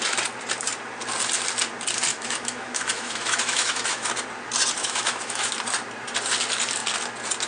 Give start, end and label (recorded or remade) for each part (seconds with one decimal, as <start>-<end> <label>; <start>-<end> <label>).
0.0-2.1 recorded; 2.1-4.1 remade; 4.1-4.8 recorded; 4.8-5.5 remade; 5.5-7.5 recorded